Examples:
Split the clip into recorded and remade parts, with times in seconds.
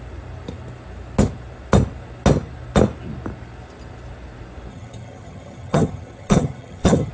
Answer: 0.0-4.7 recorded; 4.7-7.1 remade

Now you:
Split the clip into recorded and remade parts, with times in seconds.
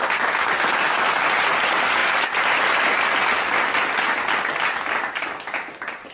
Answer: 0.0-6.1 recorded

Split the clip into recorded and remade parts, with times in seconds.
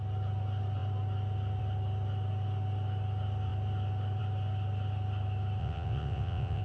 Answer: 0.0-5.6 recorded; 5.6-6.6 remade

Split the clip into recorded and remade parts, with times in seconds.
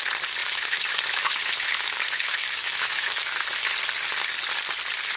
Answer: 0.0-0.4 recorded; 0.4-3.5 remade; 3.5-5.2 recorded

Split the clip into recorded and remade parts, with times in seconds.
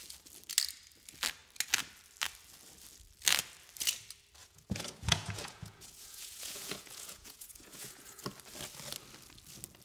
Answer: 0.0-4.4 recorded; 4.4-8.2 remade; 8.2-9.8 recorded